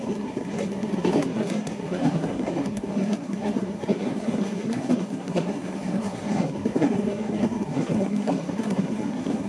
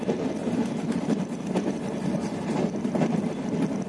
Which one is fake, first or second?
first